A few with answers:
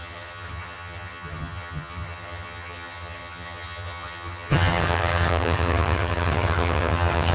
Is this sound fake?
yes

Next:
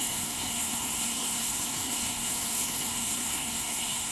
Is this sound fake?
yes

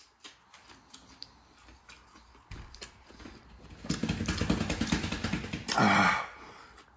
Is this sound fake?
no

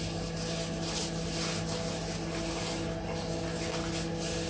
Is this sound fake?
no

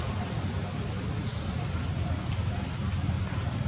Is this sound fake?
yes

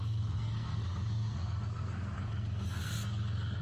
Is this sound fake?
yes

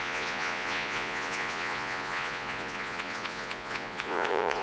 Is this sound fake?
yes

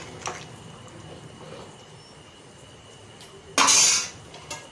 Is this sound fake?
no